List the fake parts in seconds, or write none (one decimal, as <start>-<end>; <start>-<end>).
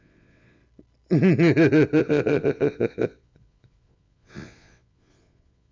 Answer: 0.0-0.6; 2.0-5.7